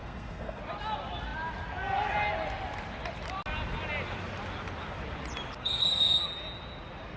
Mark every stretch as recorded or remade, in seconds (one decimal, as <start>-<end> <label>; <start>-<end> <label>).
0.0-0.6 remade; 0.6-5.6 recorded; 5.6-6.2 remade; 6.2-7.2 recorded